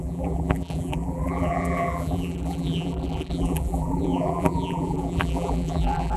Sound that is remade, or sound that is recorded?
remade